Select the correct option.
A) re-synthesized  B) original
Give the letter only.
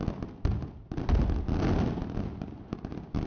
B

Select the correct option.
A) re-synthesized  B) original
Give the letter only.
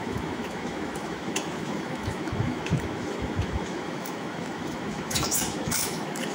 A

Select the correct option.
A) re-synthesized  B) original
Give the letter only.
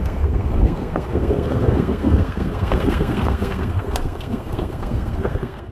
A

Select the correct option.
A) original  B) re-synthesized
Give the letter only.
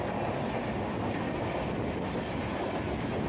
A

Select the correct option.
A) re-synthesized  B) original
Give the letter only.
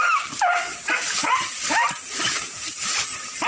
A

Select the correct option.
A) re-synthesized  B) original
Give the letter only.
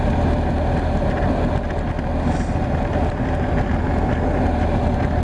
B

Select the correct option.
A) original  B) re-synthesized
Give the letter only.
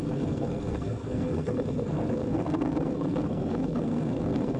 B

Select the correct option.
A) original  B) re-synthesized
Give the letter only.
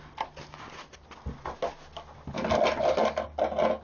A